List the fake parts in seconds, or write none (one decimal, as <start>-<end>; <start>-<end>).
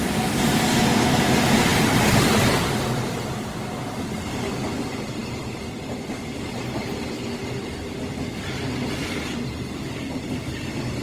none